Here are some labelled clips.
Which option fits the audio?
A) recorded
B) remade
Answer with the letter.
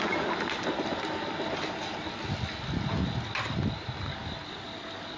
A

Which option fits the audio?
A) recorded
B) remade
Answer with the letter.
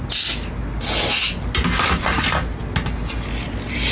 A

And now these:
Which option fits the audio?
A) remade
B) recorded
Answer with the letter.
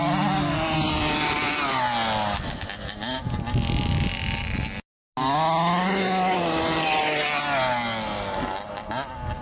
B